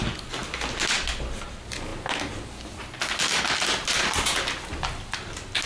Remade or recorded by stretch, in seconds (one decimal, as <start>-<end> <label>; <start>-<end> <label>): 0.0-5.7 recorded